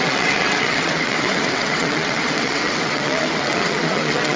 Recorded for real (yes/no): no